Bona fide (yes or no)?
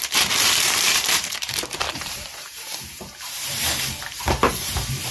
no